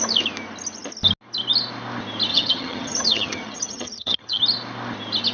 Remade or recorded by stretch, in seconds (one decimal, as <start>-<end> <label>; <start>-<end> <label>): 0.0-2.3 recorded; 2.3-4.4 remade; 4.4-5.3 recorded